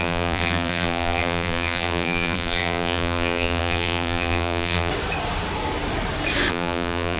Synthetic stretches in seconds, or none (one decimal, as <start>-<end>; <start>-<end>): 0.0-4.9; 6.5-7.2